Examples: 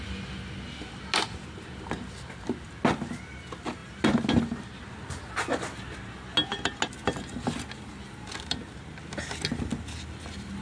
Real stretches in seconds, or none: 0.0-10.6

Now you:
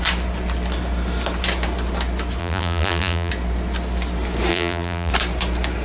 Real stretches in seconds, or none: 0.0-2.4; 3.3-4.5; 5.1-5.8